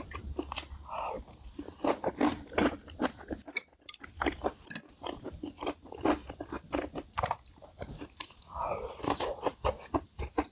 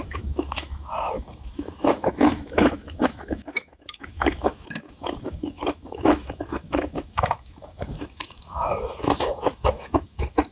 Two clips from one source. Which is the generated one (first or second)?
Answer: second